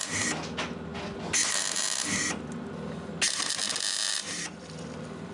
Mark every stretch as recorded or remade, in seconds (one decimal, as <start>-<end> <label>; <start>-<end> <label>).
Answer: 0.0-5.3 recorded